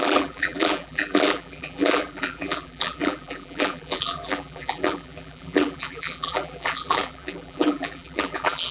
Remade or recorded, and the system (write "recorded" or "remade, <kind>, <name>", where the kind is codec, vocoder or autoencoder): remade, vocoder, BigVGAN v2